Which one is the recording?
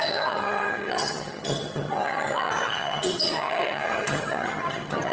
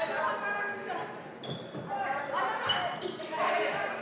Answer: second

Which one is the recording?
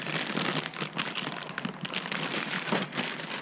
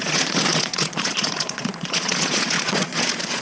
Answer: first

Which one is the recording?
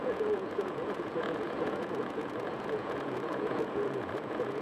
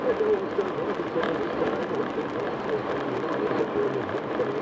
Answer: second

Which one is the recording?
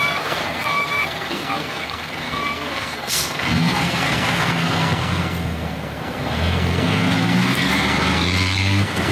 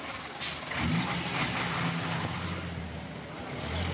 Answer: second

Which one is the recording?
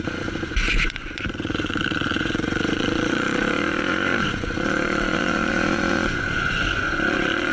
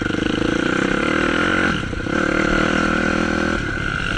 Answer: second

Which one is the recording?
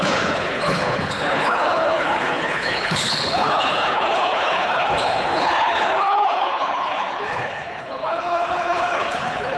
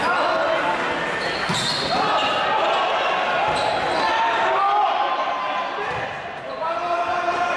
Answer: second